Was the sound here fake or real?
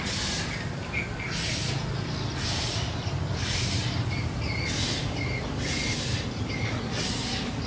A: real